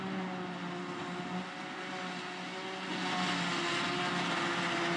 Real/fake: real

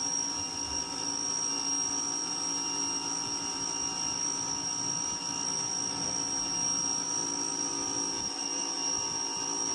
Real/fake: real